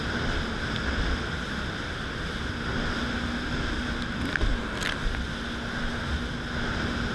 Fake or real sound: real